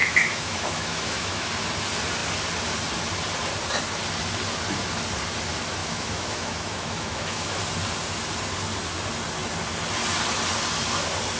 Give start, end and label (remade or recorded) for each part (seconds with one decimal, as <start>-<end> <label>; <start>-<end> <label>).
0.0-1.5 remade; 1.5-5.8 recorded; 5.8-7.6 remade; 7.6-11.4 recorded